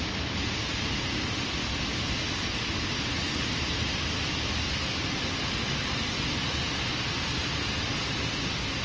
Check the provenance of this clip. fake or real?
real